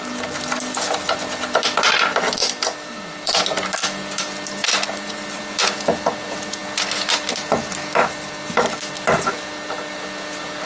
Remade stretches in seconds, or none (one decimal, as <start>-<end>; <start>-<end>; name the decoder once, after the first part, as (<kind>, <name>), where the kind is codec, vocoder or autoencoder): 2.4-3.3 (vocoder, BigVGAN v2); 4.6-5.4; 6.6-7.3; 8.0-9.3